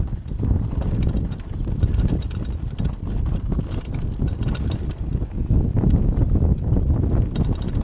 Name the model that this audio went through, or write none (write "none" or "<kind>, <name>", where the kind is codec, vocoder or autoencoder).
none